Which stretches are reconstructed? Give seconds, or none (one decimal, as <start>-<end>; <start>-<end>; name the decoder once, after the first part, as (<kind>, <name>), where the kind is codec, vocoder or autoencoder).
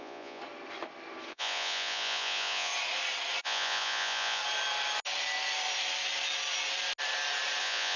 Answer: 0.0-0.4 (vocoder, Vocos); 1.3-2.7; 3.4-4.4; 7.6-8.0